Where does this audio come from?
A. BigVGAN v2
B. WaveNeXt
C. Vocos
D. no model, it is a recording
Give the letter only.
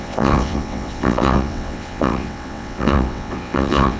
B